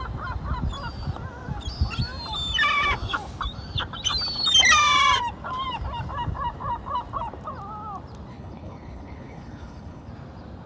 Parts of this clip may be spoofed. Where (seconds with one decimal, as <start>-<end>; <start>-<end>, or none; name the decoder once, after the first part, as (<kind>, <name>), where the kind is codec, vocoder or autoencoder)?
8.3-10.1 (codec, HILCodec)